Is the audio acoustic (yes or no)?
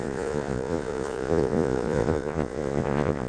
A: no